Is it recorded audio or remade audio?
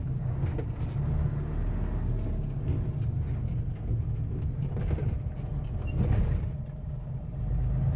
recorded